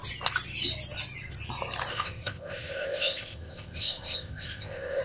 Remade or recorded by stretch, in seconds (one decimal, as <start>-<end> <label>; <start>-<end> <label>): 0.0-1.9 recorded; 1.9-5.0 remade